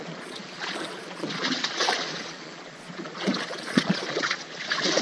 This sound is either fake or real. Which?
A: fake